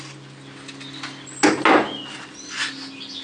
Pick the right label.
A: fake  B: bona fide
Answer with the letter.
B